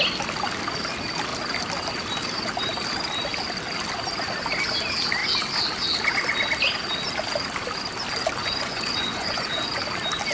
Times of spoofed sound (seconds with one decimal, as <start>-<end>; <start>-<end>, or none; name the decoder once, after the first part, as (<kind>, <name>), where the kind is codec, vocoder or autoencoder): 8.4-9.7 (vocoder, Vocos)